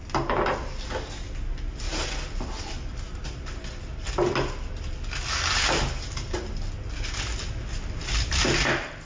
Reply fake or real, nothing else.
real